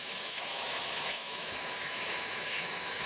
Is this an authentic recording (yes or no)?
no